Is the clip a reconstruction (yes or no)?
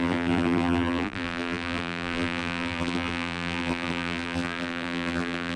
yes